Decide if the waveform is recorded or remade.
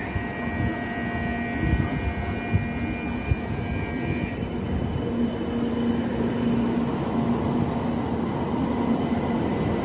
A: recorded